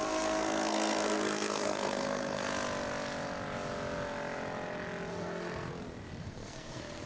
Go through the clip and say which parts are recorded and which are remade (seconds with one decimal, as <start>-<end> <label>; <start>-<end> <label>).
0.0-2.5 remade; 2.5-5.1 recorded; 5.1-5.7 remade; 5.7-6.2 recorded; 6.2-7.1 remade